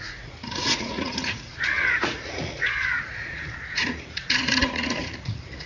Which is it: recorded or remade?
remade